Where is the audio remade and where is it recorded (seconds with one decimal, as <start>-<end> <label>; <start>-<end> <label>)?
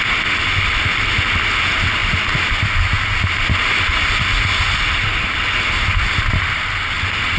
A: 0.0-7.4 recorded